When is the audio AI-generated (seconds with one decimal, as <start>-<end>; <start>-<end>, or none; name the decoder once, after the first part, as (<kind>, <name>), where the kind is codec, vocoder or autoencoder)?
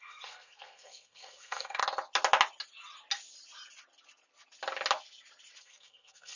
0.0-1.8 (codec, SNAC); 5.6-6.4